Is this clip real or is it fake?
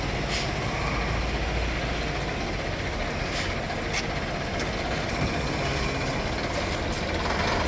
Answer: real